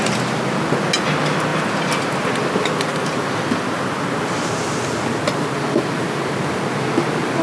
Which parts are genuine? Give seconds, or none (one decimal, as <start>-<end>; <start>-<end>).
0.0-7.4